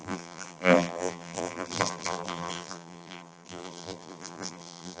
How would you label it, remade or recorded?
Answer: remade